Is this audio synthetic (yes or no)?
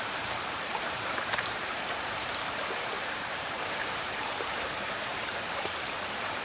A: yes